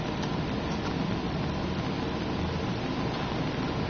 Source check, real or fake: real